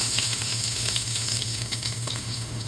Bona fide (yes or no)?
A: no